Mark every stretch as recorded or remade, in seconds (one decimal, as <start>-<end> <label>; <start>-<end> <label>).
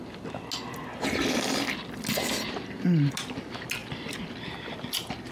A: 0.0-3.8 recorded; 3.8-5.3 remade